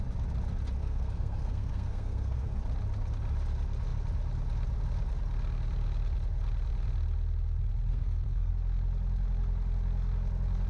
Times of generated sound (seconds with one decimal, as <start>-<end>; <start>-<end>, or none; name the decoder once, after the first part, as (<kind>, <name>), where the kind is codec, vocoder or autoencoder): 0.8-2.6 (codec, SNAC); 7.9-8.5